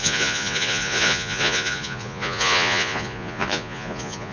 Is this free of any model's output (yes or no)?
no